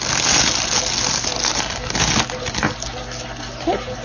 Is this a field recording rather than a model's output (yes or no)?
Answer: yes